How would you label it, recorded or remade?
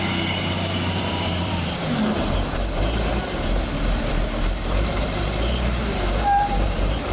remade